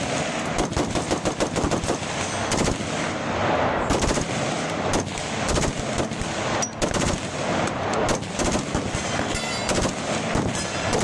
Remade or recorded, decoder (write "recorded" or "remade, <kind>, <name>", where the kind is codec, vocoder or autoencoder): recorded